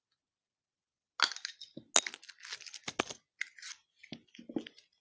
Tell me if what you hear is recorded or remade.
recorded